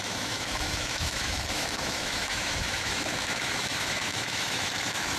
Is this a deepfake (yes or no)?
yes